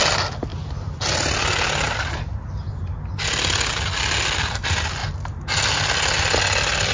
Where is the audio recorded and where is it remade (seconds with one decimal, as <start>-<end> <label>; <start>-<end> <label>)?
0.0-6.9 recorded